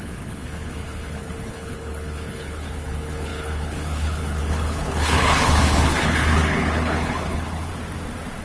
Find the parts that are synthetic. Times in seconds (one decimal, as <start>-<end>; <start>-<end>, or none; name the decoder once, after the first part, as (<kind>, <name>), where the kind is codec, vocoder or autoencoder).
0.0-7.7 (codec, HILCodec)